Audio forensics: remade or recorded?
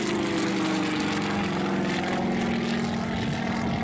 recorded